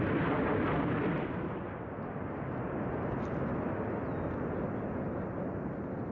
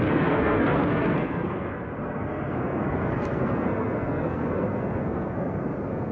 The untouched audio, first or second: first